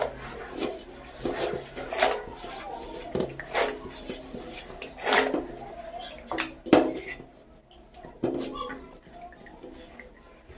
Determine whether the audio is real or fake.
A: real